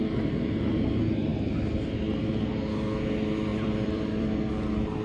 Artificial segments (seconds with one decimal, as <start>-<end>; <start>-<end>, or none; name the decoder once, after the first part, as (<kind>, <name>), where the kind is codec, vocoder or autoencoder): 3.5-4.5 (vocoder, BigVGAN v2)